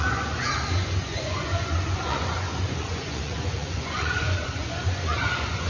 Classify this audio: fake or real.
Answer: fake